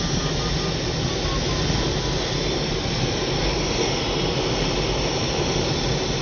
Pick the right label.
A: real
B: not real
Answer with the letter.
A